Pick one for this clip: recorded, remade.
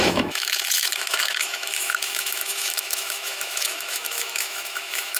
remade